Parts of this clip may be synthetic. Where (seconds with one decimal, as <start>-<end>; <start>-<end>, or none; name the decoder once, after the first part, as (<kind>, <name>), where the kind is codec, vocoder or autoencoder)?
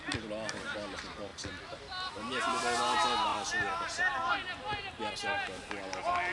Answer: none